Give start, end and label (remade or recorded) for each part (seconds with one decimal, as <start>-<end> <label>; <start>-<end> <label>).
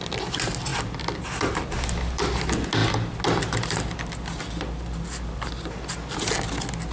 0.0-6.9 recorded